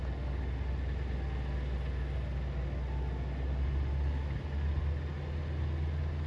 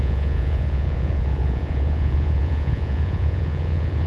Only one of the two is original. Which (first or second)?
first